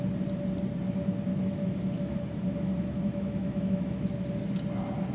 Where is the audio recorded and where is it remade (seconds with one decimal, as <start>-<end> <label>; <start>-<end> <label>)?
0.0-1.3 recorded; 1.3-4.4 remade; 4.4-5.1 recorded